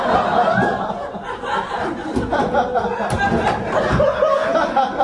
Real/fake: real